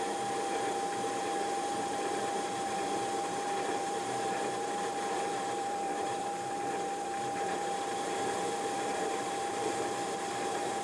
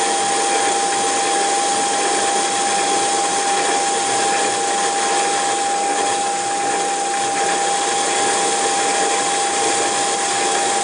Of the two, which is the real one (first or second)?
second